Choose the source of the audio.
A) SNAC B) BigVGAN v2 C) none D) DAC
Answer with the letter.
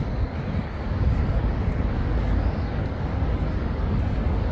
D